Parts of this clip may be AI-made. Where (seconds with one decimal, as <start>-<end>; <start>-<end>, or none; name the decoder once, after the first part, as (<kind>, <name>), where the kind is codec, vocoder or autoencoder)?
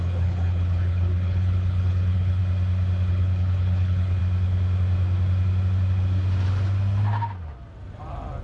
0.0-2.4 (codec, HILCodec); 3.1-4.2